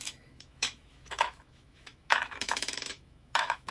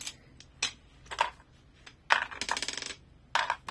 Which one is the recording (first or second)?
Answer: second